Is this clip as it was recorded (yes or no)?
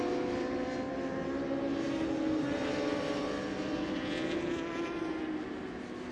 yes